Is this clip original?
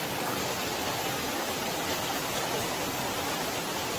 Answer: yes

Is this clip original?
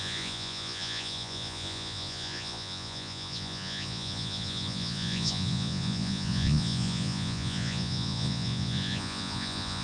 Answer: no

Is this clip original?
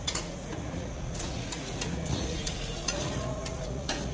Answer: no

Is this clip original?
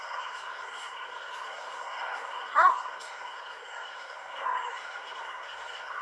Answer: no